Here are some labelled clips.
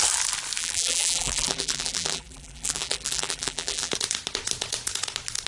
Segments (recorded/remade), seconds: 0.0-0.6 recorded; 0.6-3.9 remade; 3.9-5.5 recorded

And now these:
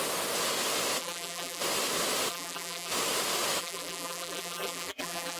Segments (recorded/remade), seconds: 0.0-1.0 recorded; 1.0-1.6 remade; 1.6-2.3 recorded; 2.3-2.9 remade; 2.9-3.6 recorded; 3.6-5.4 remade

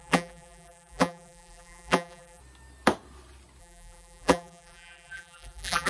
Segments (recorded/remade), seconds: 0.0-2.4 remade; 2.4-3.6 recorded; 3.6-5.9 remade

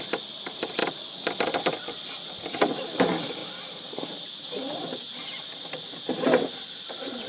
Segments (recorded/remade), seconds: 0.0-0.8 recorded; 0.8-1.6 remade; 1.6-3.4 recorded; 3.4-4.0 remade; 4.0-7.3 recorded

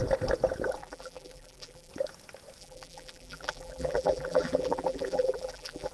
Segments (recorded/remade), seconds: 0.0-0.8 recorded; 0.8-1.9 remade; 1.9-2.6 recorded; 2.6-5.9 remade

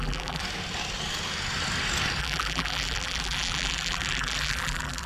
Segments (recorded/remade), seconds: 0.0-0.4 remade; 0.4-2.2 recorded; 2.2-5.1 remade

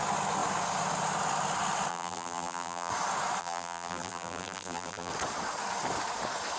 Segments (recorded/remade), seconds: 0.0-1.9 recorded; 1.9-2.9 remade; 2.9-3.4 recorded; 3.4-5.1 remade; 5.1-6.6 recorded